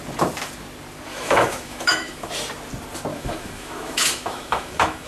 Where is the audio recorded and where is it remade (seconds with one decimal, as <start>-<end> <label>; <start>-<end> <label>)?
0.0-1.1 recorded; 1.1-2.3 remade; 2.3-3.1 recorded; 3.1-5.1 remade